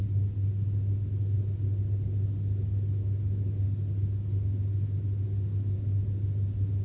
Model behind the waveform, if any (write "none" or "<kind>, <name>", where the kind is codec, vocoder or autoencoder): none